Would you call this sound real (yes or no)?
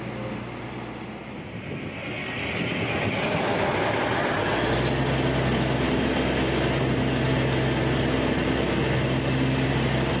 yes